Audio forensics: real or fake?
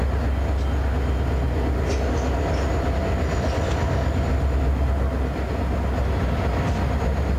real